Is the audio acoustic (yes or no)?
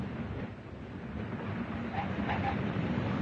no